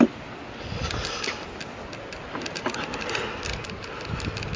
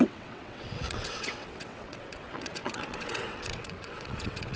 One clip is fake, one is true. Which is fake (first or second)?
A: second